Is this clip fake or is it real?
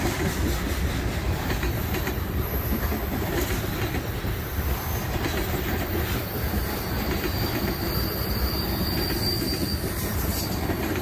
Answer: fake